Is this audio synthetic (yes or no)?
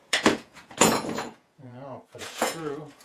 yes